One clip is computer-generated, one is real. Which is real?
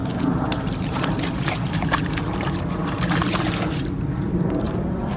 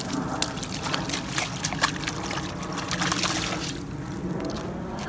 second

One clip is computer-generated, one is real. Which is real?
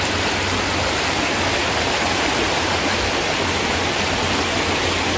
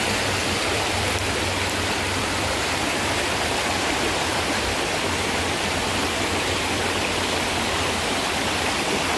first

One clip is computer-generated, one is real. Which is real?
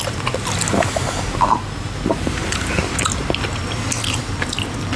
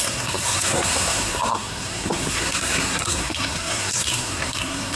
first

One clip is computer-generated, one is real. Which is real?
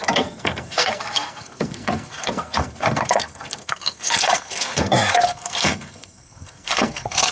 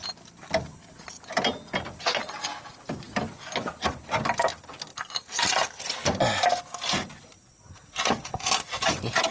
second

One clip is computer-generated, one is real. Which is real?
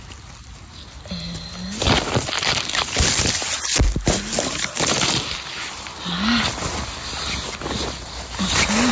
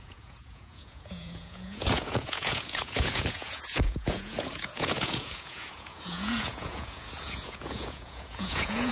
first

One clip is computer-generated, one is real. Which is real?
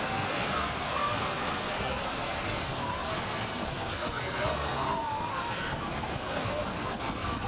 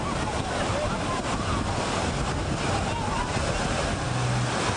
second